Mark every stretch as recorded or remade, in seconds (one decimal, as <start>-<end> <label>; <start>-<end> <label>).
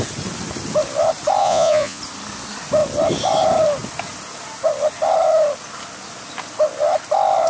0.0-1.4 recorded; 1.4-2.0 remade; 2.0-7.5 recorded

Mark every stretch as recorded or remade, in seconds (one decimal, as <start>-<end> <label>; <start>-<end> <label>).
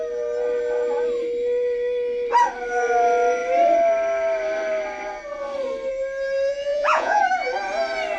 0.0-6.5 recorded; 6.5-7.2 remade; 7.2-8.2 recorded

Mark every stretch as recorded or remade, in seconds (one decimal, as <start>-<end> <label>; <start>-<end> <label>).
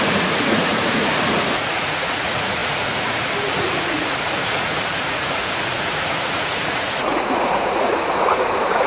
0.0-8.9 remade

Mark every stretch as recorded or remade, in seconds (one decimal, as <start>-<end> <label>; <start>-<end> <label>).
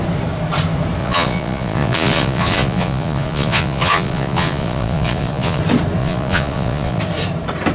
0.0-1.0 recorded; 1.0-5.6 remade; 5.6-6.0 recorded; 6.0-7.0 remade; 7.0-7.7 recorded